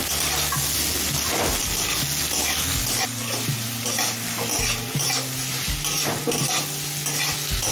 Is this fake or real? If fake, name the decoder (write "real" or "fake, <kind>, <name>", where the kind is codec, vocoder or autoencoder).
real